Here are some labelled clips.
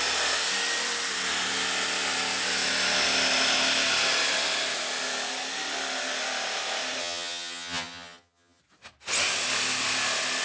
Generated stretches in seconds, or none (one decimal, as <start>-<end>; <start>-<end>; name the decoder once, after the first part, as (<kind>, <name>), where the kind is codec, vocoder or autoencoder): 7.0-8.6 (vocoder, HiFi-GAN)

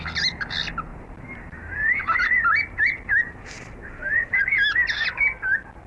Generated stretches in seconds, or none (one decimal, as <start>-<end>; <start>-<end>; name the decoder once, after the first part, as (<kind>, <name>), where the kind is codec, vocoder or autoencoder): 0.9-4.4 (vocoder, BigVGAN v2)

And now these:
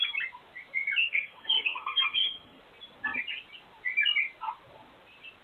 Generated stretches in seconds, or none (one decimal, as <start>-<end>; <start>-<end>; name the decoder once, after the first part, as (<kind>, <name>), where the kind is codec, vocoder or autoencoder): 1.0-2.6 (codec, SNAC)